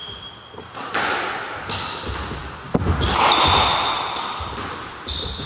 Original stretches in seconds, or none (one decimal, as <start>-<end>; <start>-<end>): 0.0-5.5